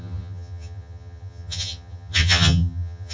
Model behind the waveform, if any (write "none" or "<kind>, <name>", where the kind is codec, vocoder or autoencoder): vocoder, HiFi-GAN